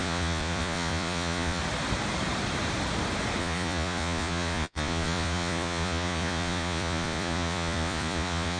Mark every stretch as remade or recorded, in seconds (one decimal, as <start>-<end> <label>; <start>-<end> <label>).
0.0-1.6 remade; 1.6-3.4 recorded; 3.4-8.6 remade